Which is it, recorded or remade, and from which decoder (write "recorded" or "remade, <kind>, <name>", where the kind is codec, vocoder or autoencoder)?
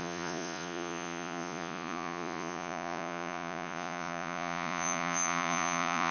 remade, vocoder, Vocos